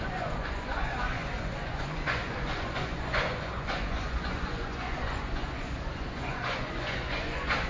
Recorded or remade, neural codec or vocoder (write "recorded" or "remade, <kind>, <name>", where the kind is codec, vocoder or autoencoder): remade, vocoder, Vocos